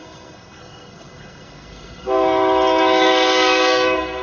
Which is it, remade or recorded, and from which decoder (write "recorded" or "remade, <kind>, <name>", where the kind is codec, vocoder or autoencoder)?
remade, codec, SNAC